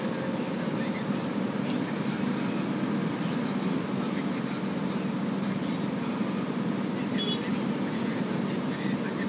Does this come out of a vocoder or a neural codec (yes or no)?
no